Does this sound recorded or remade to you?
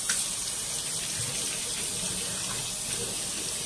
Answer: recorded